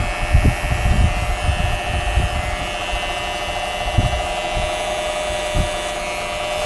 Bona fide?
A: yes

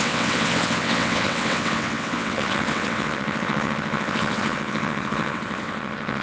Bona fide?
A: no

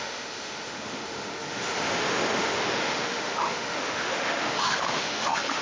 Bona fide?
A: no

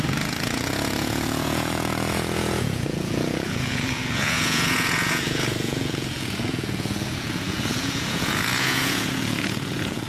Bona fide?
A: no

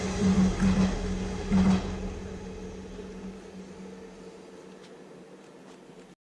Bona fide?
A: yes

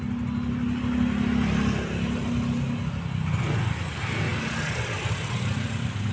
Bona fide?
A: yes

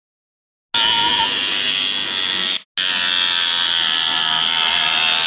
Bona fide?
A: yes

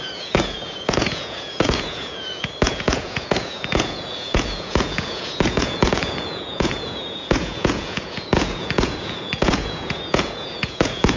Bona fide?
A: no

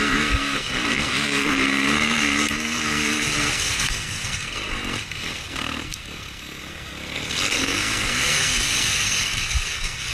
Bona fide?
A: no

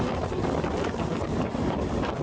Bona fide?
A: yes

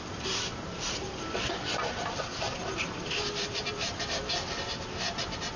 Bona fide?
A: no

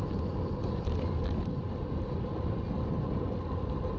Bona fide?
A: yes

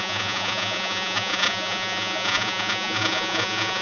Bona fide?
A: no